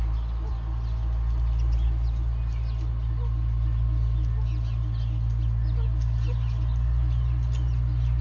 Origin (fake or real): real